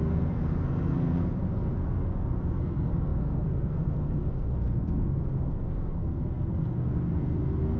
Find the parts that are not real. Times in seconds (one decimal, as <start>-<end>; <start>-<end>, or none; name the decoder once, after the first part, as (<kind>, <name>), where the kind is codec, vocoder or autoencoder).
0.0-7.8 (codec, SNAC)